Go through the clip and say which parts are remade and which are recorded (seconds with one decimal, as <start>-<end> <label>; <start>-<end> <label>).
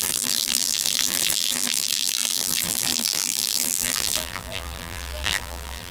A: 0.0-5.9 remade